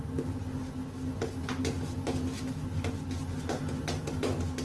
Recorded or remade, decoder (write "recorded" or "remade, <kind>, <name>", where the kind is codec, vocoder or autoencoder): recorded